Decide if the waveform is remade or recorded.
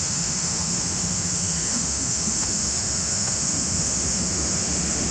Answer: remade